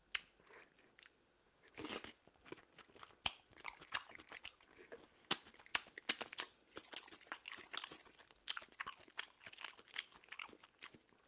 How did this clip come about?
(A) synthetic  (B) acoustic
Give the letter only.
B